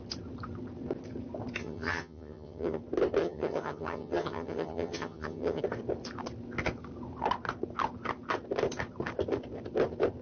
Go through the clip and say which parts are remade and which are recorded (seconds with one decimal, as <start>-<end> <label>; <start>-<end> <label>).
0.0-1.6 recorded; 1.6-2.8 remade; 2.8-3.2 recorded; 3.2-5.6 remade; 5.6-10.2 recorded

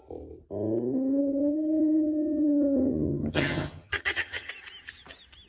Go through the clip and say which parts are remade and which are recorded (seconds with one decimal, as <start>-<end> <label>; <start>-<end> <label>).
0.0-1.2 recorded; 1.2-4.5 remade; 4.5-5.5 recorded

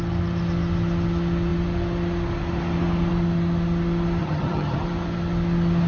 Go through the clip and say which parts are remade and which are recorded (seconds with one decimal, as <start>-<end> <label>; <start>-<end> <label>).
0.0-4.2 recorded; 4.2-4.8 remade; 4.8-5.9 recorded

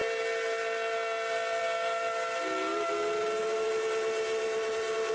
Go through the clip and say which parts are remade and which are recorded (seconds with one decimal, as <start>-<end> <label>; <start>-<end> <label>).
0.0-5.1 recorded

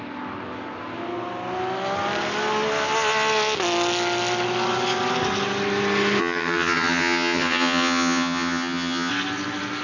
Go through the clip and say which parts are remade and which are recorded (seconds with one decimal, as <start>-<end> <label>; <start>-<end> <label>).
0.0-6.2 recorded; 6.2-9.1 remade; 9.1-9.8 recorded

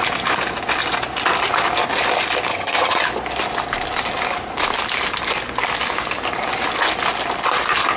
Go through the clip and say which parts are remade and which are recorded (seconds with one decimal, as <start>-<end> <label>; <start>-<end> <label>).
0.0-2.5 recorded; 2.5-3.0 remade; 3.0-8.0 recorded

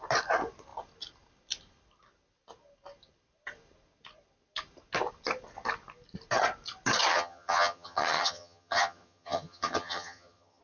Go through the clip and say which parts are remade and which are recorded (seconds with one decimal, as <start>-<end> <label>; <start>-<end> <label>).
0.0-7.1 recorded; 7.1-10.6 remade